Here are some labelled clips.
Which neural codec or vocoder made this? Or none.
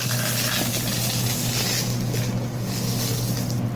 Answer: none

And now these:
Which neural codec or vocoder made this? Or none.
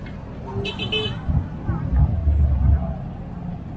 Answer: none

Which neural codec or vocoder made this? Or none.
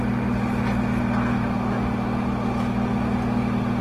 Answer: none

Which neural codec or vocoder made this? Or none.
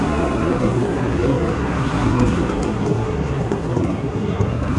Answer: codec, SNAC